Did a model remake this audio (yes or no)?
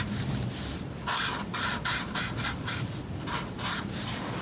no